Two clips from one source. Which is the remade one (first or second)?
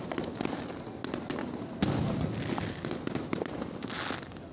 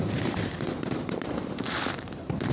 second